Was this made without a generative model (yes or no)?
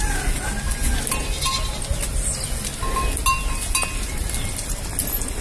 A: yes